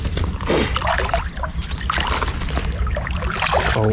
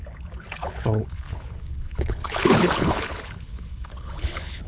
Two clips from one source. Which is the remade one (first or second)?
second